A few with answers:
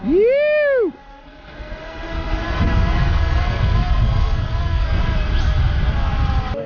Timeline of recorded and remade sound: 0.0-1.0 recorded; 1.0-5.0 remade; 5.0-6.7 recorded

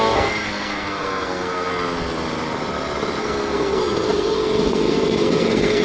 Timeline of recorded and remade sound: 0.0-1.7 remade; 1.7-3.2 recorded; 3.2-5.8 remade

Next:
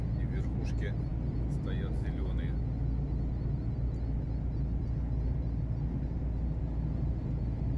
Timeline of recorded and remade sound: 0.0-7.8 recorded

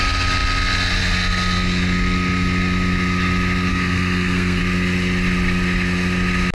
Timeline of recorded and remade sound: 0.0-3.7 recorded; 3.7-4.6 remade; 4.6-6.5 recorded